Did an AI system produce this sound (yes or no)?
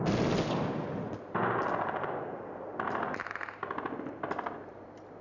no